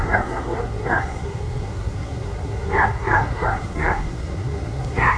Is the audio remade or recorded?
remade